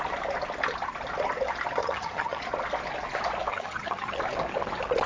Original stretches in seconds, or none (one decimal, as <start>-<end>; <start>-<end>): 0.0-1.8; 2.4-3.5; 4.2-5.1

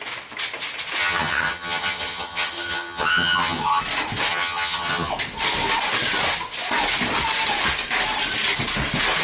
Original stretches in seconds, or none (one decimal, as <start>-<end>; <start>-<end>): 0.0-1.0; 3.8-4.3; 5.1-9.2